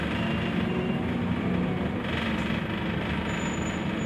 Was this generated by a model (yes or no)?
no